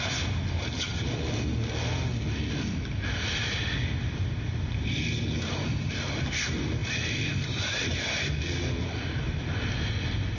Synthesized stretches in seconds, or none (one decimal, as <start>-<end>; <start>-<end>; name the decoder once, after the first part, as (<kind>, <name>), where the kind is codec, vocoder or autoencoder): none